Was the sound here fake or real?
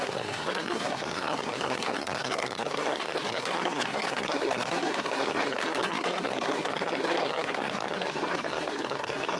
fake